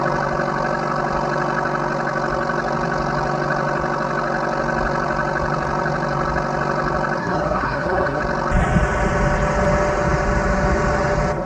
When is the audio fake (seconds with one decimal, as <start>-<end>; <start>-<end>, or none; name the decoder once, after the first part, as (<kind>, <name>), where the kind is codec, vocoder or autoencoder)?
7.2-8.2 (codec, SNAC)